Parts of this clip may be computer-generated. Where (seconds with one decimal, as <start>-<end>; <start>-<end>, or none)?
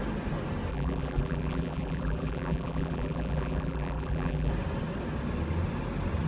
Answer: 0.7-4.5